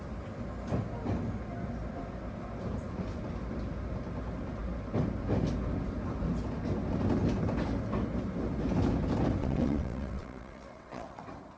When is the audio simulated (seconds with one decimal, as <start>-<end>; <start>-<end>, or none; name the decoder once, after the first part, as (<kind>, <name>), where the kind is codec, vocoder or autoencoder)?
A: 9.4-11.2 (vocoder, WaveNeXt)